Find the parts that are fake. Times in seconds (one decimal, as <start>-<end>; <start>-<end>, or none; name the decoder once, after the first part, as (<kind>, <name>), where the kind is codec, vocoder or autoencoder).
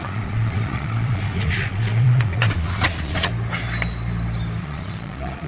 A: 0.0-3.3 (vocoder, Vocos); 4.6-5.5